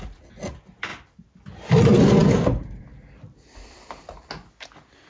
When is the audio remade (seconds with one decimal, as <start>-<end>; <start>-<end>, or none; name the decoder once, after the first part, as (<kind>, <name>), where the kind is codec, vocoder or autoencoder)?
0.9-1.8 (vocoder, BigVGAN v2)